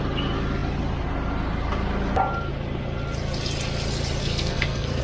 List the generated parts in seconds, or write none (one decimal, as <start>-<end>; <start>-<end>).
4.2-5.0